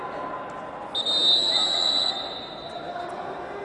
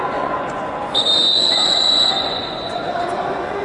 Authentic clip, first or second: first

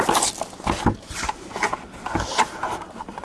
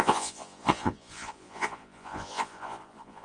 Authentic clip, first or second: first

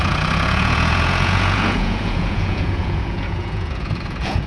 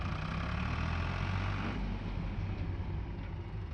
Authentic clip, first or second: second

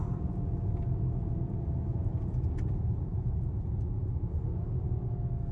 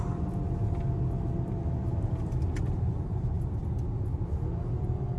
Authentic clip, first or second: second